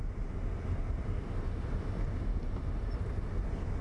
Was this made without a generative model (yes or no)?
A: yes